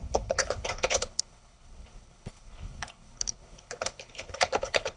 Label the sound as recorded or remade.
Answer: remade